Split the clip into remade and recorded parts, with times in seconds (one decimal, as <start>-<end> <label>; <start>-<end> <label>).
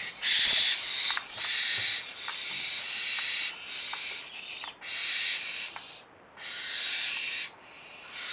0.0-8.3 recorded